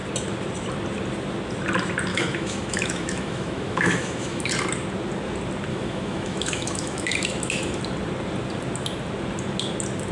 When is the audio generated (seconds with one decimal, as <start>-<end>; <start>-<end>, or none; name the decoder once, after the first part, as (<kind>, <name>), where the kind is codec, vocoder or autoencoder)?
2.1-4.5 (autoencoder, DAC-VAE); 5.7-7.8